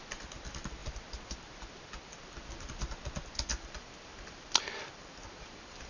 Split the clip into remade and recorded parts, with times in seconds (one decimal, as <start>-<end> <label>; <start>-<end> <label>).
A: 0.0-3.5 recorded; 3.5-5.9 remade